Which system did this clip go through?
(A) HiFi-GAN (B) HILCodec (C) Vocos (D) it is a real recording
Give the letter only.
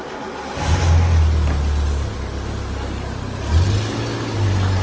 D